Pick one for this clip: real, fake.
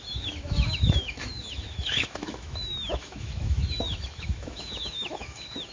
fake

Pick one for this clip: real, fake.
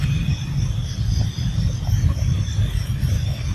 real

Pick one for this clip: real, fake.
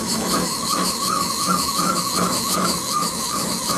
fake